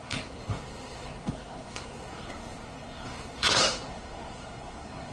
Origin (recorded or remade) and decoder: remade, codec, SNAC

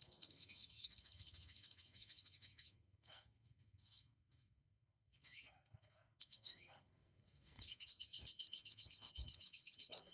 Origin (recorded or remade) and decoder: remade, codec, SNAC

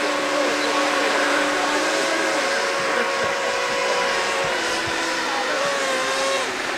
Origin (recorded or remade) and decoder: remade, vocoder, BigVGAN v2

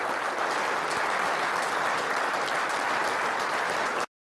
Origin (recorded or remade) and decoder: recorded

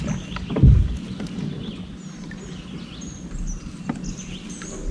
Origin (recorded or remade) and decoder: recorded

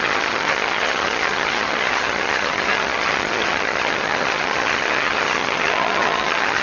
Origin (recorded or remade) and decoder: remade, vocoder, HiFi-GAN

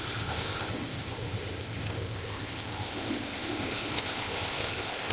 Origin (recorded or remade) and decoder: remade, codec, ZipCodec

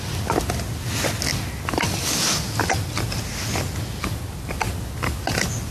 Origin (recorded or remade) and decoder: recorded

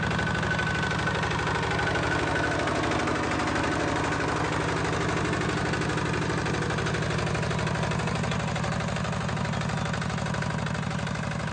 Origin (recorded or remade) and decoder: recorded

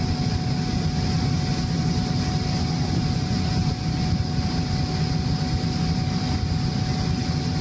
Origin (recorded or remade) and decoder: recorded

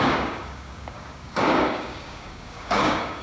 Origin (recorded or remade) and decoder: remade, codec, DAC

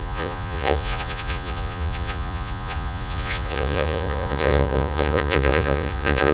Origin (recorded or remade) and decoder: remade, vocoder, Vocos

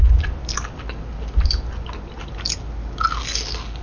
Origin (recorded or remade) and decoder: recorded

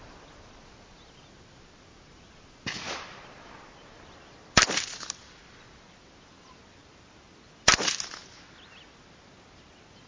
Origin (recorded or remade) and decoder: recorded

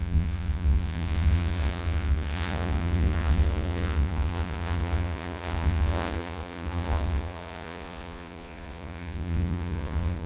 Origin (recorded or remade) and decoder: remade, vocoder, Vocos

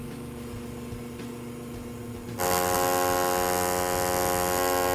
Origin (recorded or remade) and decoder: recorded